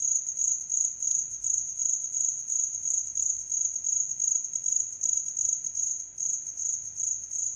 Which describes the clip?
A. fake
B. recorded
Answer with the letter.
B